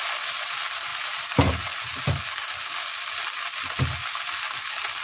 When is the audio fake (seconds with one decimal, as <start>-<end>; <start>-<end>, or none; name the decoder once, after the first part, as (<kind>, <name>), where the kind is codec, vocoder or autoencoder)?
none